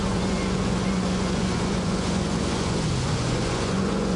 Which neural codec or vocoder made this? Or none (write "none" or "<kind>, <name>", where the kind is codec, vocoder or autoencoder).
vocoder, Vocos